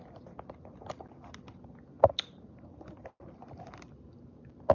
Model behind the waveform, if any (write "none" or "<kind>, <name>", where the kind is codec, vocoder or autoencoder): none